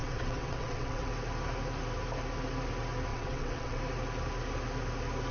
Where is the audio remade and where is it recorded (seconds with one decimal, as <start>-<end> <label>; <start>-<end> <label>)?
0.0-1.1 remade; 1.1-3.1 recorded; 3.1-3.8 remade; 3.8-5.3 recorded